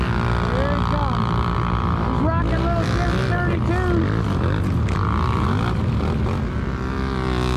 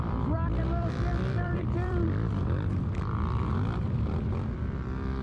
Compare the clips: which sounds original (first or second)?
first